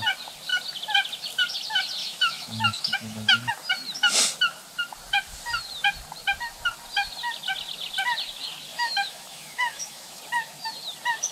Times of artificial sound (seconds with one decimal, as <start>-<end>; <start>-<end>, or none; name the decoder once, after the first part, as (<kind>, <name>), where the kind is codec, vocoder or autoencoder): 2.0-3.5 (autoencoder, DAC-VAE); 8.7-10.2